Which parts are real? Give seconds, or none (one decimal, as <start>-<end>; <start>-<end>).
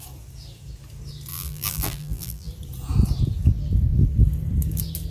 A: 0.0-1.3; 2.5-5.1